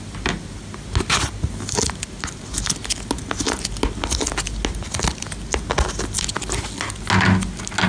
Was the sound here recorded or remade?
recorded